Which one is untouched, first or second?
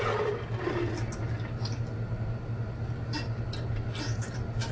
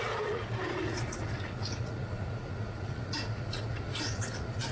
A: first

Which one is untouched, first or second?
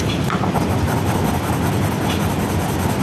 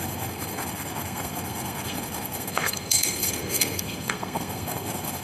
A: first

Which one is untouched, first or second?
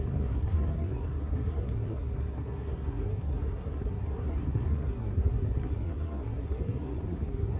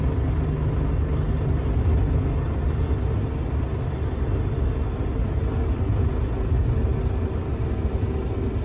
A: second